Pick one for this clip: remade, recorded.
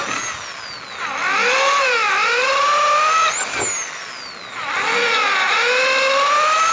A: recorded